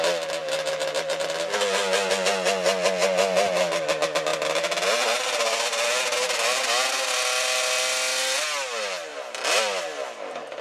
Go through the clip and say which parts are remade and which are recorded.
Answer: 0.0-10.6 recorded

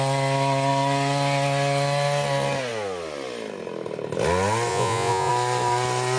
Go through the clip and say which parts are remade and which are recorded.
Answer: 0.0-4.7 recorded; 4.7-5.3 remade; 5.3-6.2 recorded

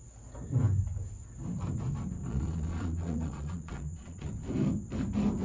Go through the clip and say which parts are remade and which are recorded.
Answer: 0.0-2.3 recorded; 2.3-4.3 remade; 4.3-5.4 recorded

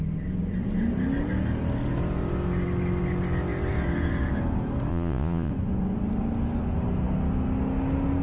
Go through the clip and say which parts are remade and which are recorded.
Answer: 0.0-4.9 recorded; 4.9-5.5 remade; 5.5-8.2 recorded

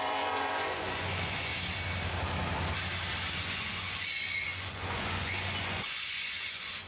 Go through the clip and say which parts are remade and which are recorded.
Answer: 0.0-1.5 remade; 1.5-3.4 recorded; 3.4-6.9 remade

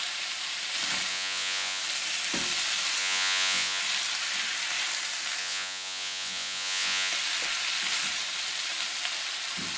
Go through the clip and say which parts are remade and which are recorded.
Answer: 0.0-1.1 recorded; 1.1-1.8 remade; 1.8-3.0 recorded; 3.0-3.8 remade; 3.8-5.4 recorded; 5.4-7.1 remade; 7.1-9.8 recorded